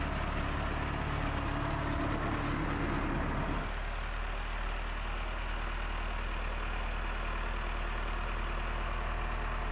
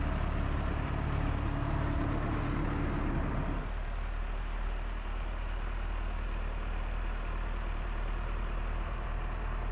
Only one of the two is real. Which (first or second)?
first